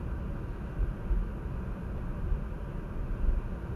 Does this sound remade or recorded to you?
recorded